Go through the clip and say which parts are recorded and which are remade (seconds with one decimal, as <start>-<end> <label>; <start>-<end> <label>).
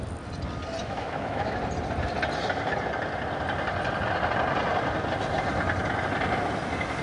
0.0-0.8 recorded; 0.8-1.6 remade; 1.6-7.0 recorded